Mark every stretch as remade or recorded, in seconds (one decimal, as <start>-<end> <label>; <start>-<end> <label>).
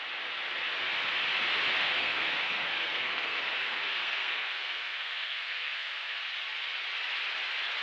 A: 0.0-1.8 recorded; 1.8-6.2 remade; 6.2-7.8 recorded